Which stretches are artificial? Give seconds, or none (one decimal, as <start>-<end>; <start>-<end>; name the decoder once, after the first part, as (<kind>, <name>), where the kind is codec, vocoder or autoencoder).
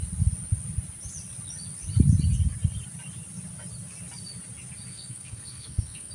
4.9-6.1 (codec, SNAC)